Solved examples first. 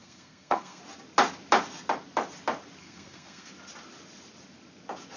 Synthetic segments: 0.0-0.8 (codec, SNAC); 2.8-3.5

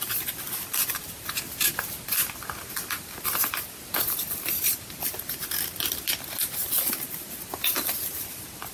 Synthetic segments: 0.0-5.7 (vocoder, BigVGAN v2); 7.1-8.7

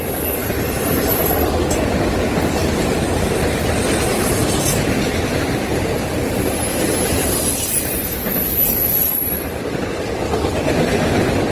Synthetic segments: 8.3-9.8 (vocoder, BigVGAN v2)